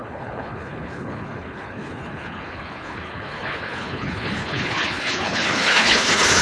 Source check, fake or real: fake